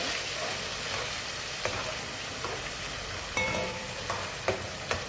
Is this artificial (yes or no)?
yes